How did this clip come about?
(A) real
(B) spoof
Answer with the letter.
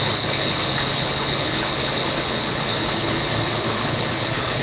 B